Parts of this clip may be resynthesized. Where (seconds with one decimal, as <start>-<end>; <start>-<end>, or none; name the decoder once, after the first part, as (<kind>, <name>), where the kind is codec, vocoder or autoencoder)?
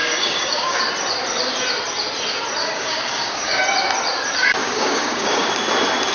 0.0-0.8 (codec, DAC); 2.6-3.6; 4.6-5.5